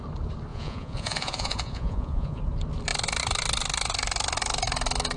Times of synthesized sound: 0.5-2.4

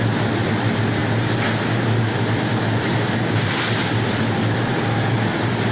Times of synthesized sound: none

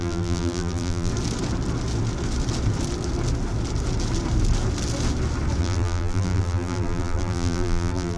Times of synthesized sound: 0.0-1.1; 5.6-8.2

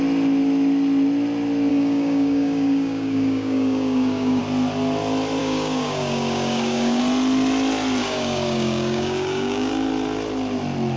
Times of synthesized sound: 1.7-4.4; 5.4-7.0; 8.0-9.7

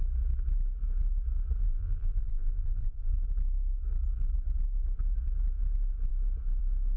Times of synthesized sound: 1.6-3.1